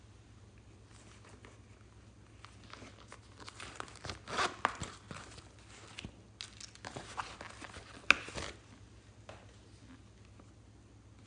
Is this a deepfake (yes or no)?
no